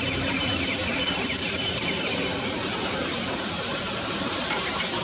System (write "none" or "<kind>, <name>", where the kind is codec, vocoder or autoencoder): vocoder, BigVGAN v2